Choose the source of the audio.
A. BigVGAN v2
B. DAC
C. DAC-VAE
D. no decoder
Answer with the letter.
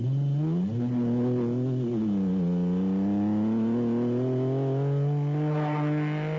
D